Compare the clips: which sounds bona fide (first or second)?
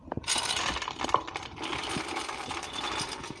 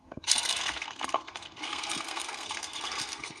first